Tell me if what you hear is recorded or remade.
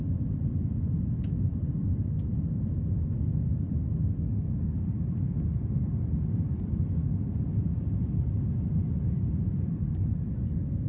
recorded